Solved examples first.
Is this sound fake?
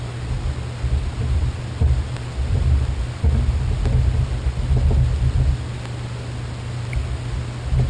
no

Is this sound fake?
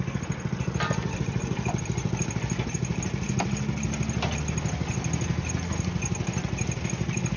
no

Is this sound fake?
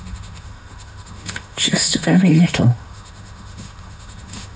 yes